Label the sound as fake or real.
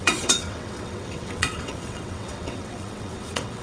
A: fake